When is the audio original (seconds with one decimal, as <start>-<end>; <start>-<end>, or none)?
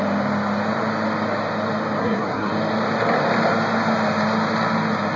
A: 0.0-2.0; 2.5-5.2